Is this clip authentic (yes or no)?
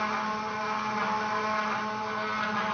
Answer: yes